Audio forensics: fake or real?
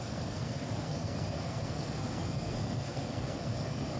fake